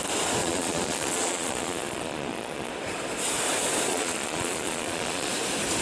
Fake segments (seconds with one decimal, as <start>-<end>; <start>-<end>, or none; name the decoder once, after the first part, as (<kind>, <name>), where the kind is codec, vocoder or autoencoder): 0.4-2.7 (vocoder, Vocos); 3.9-5.3